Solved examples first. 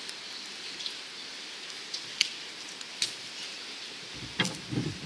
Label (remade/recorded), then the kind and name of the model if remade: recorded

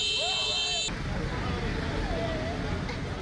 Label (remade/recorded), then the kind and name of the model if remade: recorded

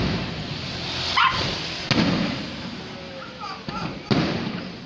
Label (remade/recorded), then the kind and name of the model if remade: recorded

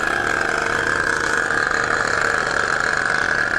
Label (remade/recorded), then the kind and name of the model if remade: recorded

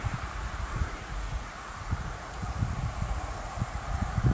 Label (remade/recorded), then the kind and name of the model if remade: remade, vocoder, Vocos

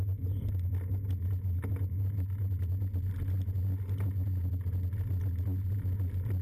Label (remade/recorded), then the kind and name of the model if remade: recorded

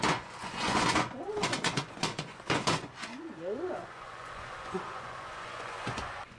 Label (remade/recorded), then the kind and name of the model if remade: remade, vocoder, Vocos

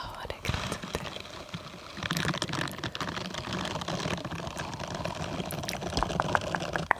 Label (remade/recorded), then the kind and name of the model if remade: recorded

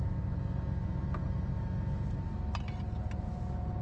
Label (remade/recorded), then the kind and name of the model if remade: recorded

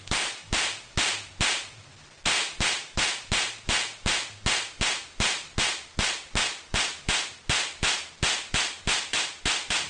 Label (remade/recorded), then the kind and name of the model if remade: recorded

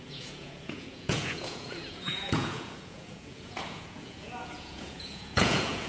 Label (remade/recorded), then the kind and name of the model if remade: remade, vocoder, Vocos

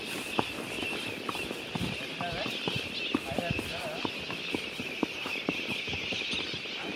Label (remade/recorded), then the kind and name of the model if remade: recorded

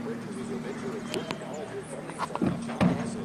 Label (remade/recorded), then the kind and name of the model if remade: recorded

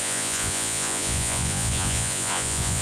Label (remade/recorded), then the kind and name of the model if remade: remade, vocoder, Vocos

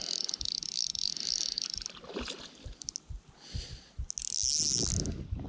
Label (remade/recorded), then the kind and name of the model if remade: recorded